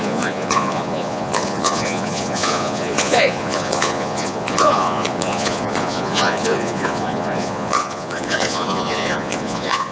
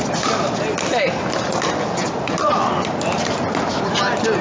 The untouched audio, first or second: second